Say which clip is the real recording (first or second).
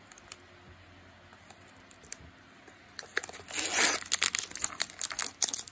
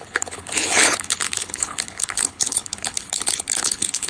first